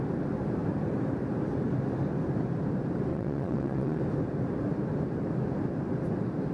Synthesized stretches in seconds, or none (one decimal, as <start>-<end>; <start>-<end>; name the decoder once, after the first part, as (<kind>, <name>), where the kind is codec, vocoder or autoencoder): 3.1-4.0 (vocoder, WaveNeXt)